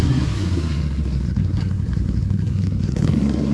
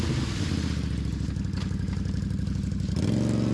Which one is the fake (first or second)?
first